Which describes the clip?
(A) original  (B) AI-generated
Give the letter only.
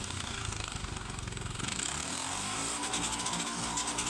B